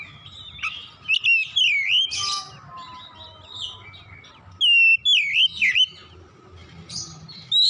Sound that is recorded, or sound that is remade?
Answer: recorded